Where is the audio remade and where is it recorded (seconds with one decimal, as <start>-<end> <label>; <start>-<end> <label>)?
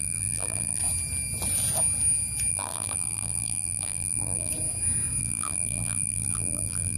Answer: 0.0-0.8 remade; 0.8-2.5 recorded; 2.5-4.5 remade; 4.5-5.2 recorded; 5.2-7.0 remade